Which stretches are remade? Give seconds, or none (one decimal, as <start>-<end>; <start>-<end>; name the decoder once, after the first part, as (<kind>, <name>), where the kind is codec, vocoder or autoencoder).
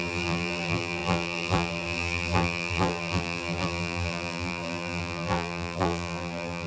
0.0-6.7 (vocoder, BigVGAN v2)